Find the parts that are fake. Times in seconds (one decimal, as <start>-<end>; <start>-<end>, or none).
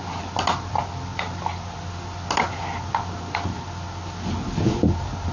none